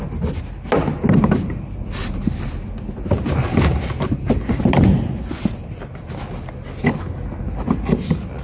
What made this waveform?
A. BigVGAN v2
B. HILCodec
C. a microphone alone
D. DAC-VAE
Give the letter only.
C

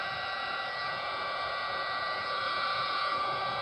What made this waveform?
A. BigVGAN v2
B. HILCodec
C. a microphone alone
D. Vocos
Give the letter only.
D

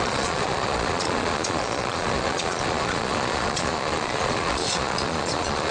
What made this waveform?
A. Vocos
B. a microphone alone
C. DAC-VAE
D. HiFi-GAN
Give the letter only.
A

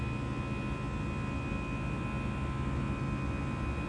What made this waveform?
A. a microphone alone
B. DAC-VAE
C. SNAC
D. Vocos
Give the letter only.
A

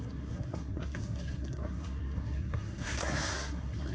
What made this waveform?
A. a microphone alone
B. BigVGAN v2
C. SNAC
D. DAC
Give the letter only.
C